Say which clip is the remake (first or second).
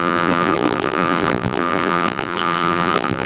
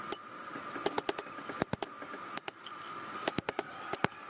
first